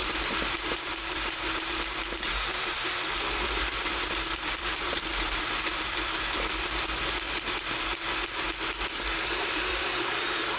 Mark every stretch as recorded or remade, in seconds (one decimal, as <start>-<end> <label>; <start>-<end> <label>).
0.0-0.9 recorded; 0.9-10.6 remade